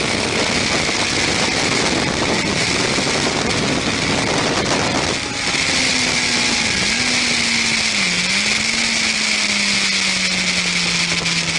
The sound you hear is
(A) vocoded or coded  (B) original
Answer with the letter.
B